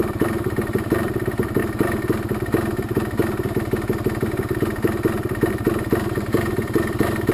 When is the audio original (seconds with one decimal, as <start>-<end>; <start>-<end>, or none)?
1.6-5.5